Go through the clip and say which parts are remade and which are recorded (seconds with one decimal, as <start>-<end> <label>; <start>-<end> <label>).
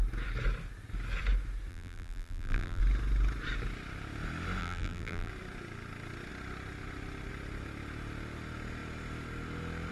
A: 0.0-1.7 recorded; 1.7-2.8 remade; 2.8-4.6 recorded; 4.6-5.3 remade; 5.3-9.9 recorded